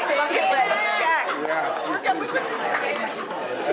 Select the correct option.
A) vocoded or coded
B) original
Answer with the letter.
B